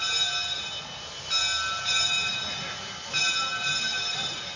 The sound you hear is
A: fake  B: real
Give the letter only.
B